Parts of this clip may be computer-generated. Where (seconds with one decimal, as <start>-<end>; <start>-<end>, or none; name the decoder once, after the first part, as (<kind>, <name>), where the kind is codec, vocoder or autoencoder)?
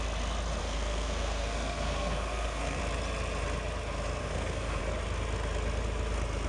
0.6-2.8 (codec, SNAC); 4.2-4.8